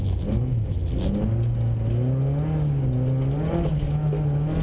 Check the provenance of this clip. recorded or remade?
recorded